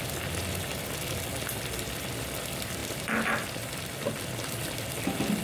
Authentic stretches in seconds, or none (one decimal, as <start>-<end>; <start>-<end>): 0.0-5.4